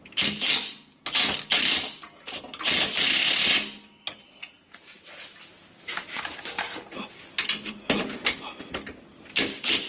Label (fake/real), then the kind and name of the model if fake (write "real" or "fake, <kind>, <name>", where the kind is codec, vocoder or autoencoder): real